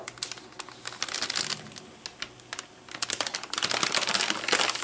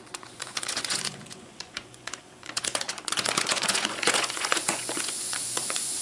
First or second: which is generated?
second